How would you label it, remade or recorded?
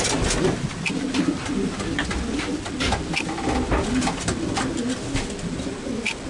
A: recorded